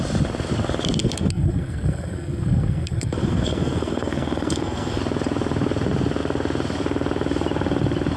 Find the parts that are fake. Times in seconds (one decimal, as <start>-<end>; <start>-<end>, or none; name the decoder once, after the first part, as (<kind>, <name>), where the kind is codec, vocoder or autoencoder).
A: 1.0-5.0 (codec, SNAC)